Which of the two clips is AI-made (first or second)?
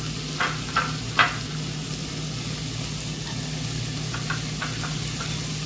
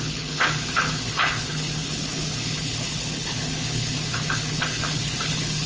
second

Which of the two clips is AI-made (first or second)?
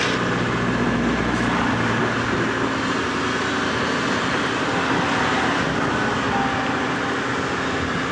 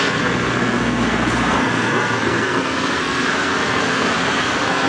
second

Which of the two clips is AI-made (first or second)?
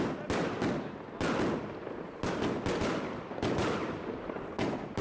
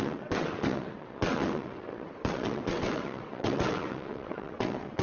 second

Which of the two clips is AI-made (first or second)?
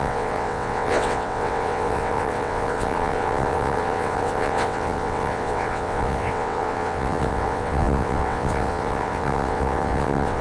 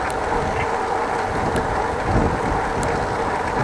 first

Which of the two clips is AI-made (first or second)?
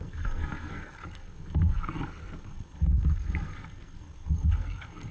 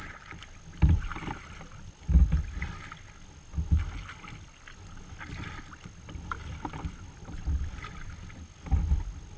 first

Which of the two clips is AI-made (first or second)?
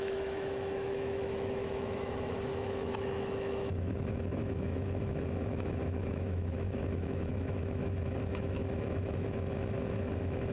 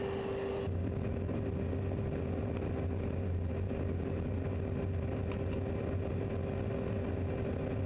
first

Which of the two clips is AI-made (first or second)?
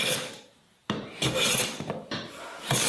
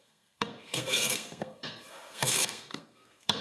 second